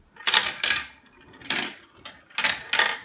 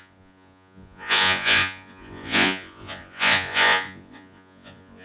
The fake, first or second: second